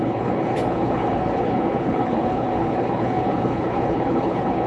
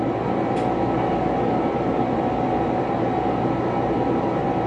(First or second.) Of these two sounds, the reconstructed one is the first